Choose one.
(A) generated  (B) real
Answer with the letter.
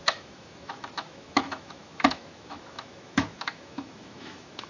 A